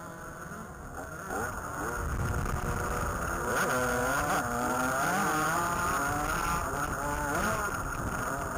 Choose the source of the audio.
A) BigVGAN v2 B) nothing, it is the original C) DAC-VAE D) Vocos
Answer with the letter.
B